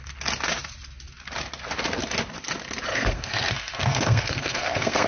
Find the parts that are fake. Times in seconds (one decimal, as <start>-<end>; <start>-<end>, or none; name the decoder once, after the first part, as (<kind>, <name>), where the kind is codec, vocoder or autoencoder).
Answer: 2.9-5.1 (codec, SNAC)